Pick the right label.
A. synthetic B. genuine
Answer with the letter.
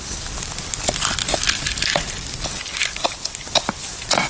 B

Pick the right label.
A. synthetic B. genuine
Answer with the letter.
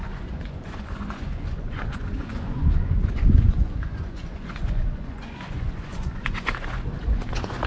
A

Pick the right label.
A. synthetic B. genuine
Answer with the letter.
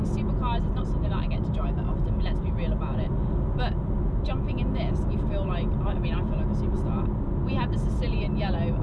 B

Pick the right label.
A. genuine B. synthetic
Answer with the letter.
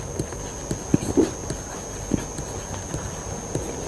A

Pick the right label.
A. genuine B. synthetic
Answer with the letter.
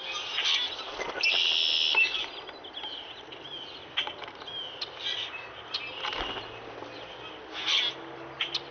A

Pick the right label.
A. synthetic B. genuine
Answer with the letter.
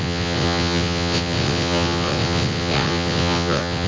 A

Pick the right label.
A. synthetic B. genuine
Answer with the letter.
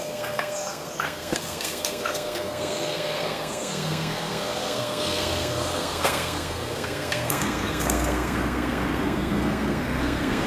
A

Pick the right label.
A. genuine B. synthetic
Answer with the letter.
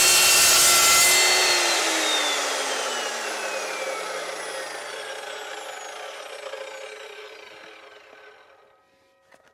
A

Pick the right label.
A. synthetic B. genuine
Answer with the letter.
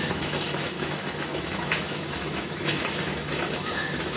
A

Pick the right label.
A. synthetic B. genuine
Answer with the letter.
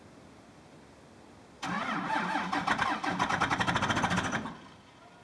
B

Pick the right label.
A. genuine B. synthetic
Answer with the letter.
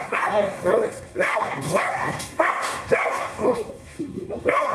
B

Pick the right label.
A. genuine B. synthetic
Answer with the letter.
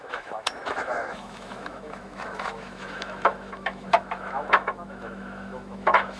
B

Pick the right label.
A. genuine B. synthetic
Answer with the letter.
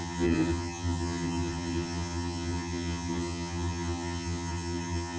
B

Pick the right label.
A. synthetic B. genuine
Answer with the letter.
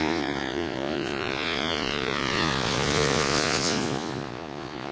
A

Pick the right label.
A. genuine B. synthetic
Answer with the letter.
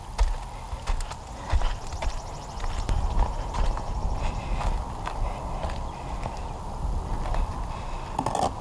A